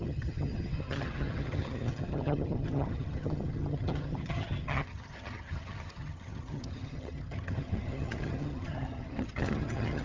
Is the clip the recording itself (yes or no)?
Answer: no